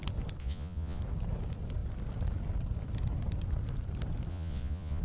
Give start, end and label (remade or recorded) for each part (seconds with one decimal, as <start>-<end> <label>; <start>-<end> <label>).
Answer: 0.0-0.4 recorded; 0.4-1.0 remade; 1.0-4.3 recorded; 4.3-5.0 remade